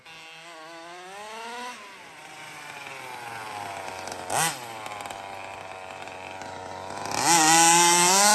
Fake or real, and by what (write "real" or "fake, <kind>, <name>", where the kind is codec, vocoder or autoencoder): real